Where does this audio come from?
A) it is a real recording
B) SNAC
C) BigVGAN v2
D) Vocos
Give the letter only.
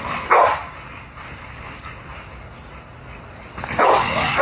A